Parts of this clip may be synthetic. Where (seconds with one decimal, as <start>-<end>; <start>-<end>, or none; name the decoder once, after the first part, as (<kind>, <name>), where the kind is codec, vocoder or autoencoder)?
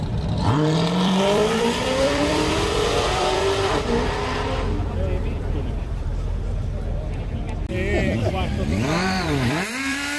0.0-6.1 (vocoder, BigVGAN v2); 8.3-10.2